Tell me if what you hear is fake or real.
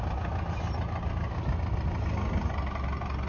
real